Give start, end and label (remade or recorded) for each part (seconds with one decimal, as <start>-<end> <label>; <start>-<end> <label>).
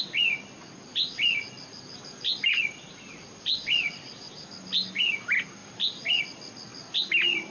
0.0-0.9 recorded; 0.9-4.5 remade; 4.5-5.6 recorded; 5.6-6.2 remade; 6.2-7.5 recorded